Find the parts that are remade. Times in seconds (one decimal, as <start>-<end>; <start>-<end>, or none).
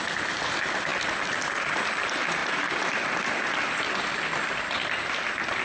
none